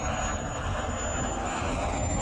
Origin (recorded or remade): recorded